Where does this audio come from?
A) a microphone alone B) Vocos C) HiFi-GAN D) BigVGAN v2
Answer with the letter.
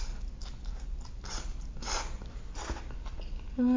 A